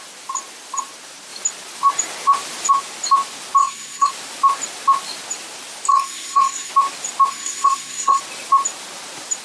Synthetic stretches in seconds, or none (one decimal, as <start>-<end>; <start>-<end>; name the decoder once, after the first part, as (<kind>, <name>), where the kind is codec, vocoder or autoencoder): 3.6-4.1 (codec, SNAC); 5.9-6.7; 7.3-8.2